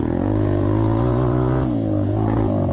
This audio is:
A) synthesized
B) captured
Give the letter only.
A